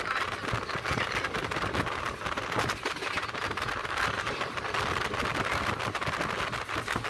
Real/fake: real